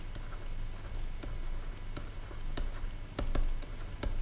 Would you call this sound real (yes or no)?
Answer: yes